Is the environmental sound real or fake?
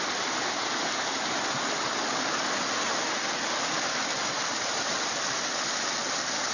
real